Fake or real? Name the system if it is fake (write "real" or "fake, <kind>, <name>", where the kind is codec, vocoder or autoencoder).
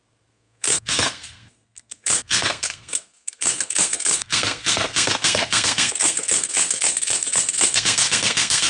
fake, codec, SNAC